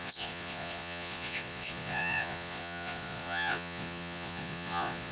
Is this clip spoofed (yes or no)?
yes